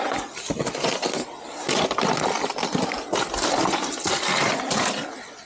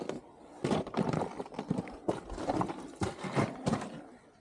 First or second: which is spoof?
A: second